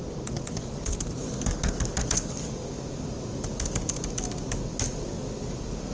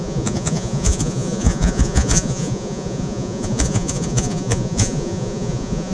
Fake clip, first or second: second